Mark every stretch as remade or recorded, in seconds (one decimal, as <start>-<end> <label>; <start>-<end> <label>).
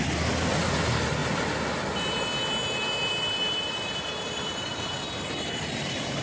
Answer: 0.0-6.2 recorded